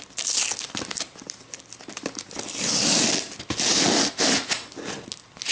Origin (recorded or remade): recorded